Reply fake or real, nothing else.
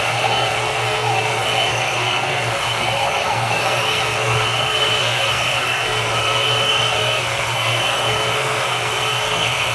fake